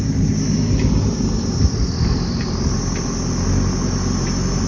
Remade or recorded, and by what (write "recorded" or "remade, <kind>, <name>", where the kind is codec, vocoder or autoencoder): recorded